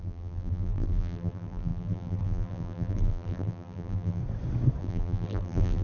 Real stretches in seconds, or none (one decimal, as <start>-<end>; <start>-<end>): 4.2-4.8